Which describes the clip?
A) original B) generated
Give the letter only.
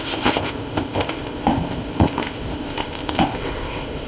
B